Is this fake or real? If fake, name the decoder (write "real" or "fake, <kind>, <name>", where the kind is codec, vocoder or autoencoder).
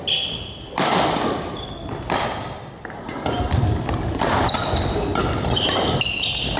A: real